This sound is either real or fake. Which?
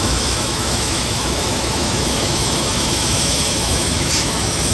fake